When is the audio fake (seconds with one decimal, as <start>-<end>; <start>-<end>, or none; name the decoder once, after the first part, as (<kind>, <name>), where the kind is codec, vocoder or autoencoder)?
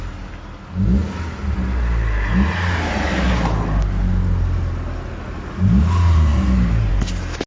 none